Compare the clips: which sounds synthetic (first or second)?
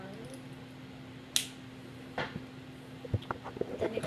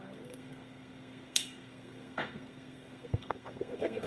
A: second